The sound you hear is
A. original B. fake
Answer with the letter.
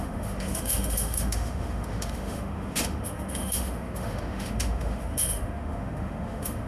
B